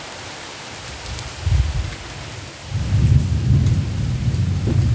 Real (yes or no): yes